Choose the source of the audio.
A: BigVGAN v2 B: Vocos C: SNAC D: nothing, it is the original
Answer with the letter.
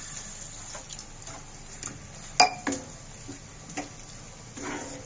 D